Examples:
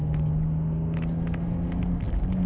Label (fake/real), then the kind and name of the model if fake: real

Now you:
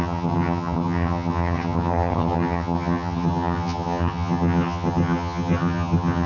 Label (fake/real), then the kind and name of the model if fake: fake, vocoder, HiFi-GAN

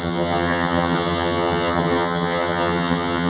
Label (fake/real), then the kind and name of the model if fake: fake, vocoder, HiFi-GAN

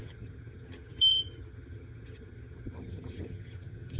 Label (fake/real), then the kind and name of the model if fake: fake, vocoder, HiFi-GAN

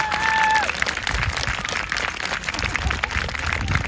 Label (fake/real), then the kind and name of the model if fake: real